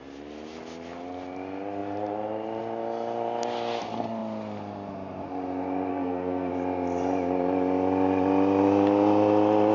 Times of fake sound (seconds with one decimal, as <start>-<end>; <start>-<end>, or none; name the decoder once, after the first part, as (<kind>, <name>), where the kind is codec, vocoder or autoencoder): 5.9-6.5 (codec, SNAC)